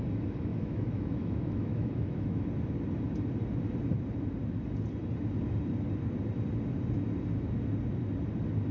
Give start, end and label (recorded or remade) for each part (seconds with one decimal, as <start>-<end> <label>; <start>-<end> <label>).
0.0-0.5 recorded; 0.5-2.4 remade; 2.4-8.7 recorded